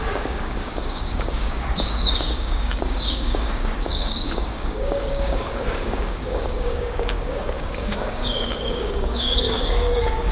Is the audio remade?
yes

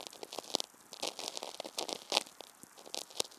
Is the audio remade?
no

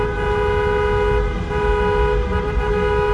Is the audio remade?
no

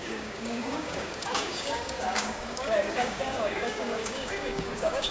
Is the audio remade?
yes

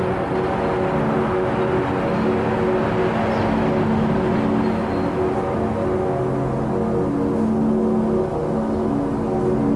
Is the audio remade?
no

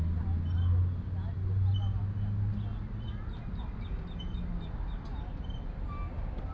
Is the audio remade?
no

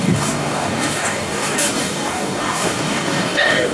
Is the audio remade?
yes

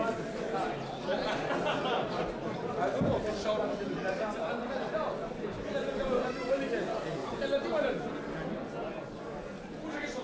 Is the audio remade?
no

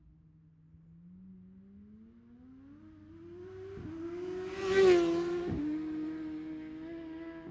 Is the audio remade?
no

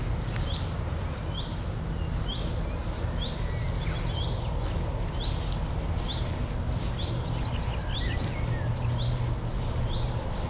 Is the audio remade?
no